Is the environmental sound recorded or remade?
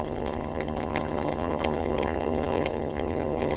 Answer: remade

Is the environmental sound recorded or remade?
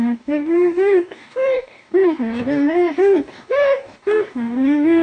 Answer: remade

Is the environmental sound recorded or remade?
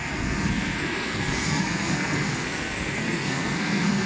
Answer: remade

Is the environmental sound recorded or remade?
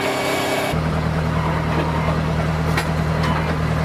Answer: recorded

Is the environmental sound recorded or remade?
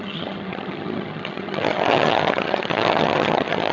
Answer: remade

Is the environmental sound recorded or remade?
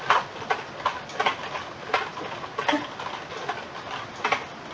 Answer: recorded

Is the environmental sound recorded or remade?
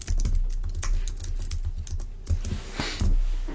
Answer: recorded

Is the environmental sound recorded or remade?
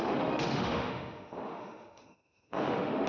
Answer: remade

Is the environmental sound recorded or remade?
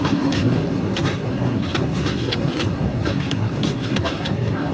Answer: remade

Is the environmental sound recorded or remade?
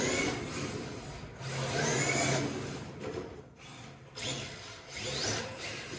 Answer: recorded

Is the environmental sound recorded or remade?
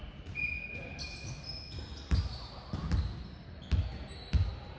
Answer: recorded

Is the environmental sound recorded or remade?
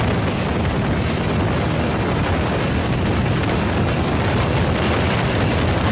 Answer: recorded